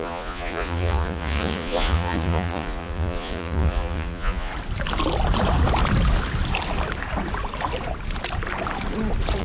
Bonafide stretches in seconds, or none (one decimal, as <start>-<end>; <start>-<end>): 4.5-9.4